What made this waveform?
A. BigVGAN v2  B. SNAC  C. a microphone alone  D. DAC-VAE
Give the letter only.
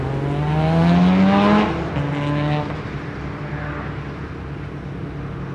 C